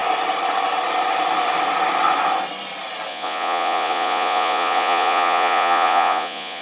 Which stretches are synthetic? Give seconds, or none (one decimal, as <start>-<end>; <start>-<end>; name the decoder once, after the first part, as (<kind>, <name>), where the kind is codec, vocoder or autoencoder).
3.1-6.6 (vocoder, Vocos)